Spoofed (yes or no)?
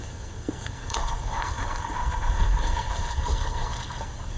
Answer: yes